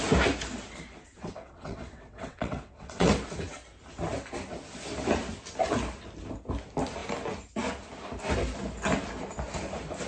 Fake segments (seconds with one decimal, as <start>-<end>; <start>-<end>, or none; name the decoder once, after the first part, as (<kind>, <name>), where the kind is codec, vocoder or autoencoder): 1.2-3.1 (vocoder, WaveNeXt)